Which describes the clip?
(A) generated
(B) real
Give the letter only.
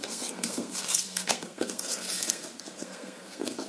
A